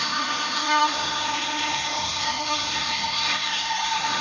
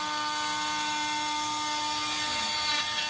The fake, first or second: first